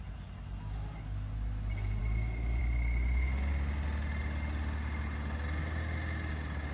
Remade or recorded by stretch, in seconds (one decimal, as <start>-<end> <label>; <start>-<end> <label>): 0.0-6.7 recorded